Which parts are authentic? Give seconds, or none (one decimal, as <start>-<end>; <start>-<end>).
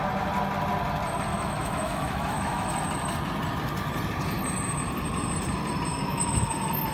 0.0-1.3; 2.7-5.9; 6.5-6.9